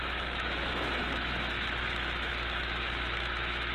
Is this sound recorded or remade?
remade